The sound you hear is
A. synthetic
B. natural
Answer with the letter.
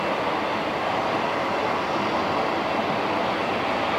B